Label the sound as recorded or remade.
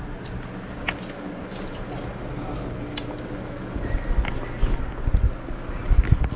recorded